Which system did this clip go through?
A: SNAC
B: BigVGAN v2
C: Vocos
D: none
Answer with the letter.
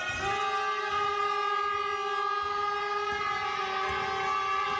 D